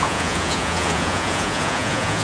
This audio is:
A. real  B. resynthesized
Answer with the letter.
B